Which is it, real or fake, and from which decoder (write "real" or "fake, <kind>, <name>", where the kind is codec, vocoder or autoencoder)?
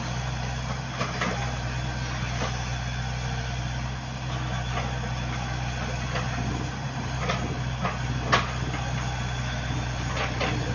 real